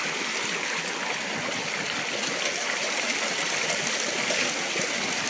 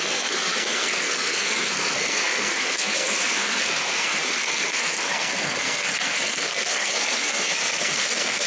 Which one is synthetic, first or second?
second